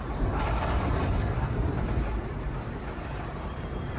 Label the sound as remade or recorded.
remade